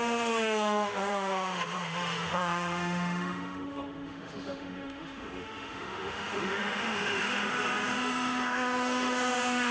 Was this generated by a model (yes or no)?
yes